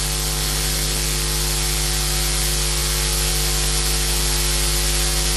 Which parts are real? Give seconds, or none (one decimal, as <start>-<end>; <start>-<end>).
0.0-5.4